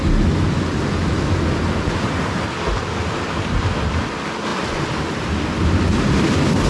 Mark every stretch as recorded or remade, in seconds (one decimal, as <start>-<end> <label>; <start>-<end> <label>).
0.0-6.7 recorded

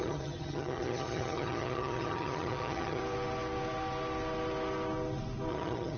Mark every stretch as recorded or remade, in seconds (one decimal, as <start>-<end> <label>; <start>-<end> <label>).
0.0-3.0 remade; 3.0-5.5 recorded; 5.5-6.0 remade

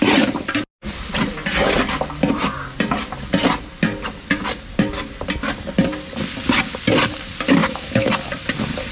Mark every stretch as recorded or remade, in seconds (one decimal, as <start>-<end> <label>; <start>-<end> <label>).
0.0-7.6 recorded; 7.6-8.1 remade; 8.1-8.9 recorded

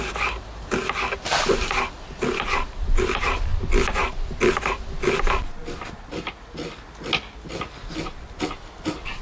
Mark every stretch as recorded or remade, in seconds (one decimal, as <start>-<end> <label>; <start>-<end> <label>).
0.0-9.2 recorded

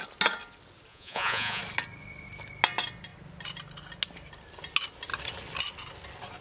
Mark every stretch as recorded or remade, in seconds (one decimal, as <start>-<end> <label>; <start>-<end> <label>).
0.0-0.9 recorded; 0.9-1.6 remade; 1.6-6.4 recorded